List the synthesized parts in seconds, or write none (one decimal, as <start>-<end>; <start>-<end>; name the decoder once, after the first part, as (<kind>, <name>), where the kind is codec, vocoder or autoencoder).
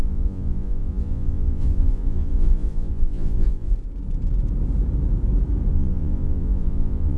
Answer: 0.0-3.7 (vocoder, Vocos); 5.7-7.2